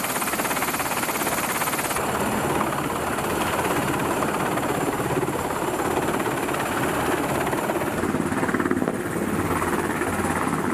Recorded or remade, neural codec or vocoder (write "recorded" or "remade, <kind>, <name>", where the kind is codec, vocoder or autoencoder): recorded